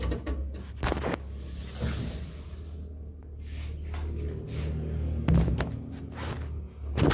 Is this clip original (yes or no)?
yes